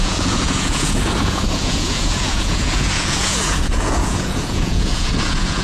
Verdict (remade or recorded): remade